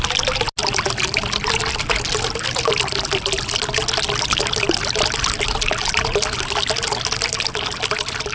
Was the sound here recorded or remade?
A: recorded